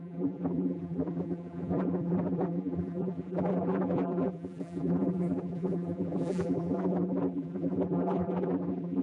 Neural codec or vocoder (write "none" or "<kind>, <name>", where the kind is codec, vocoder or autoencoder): vocoder, BigVGAN v2